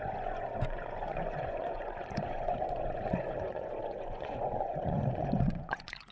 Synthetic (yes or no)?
yes